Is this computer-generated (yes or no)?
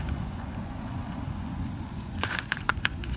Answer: yes